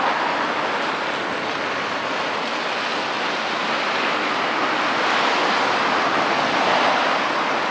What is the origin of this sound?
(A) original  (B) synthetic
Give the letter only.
A